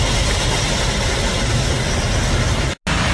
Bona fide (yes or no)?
yes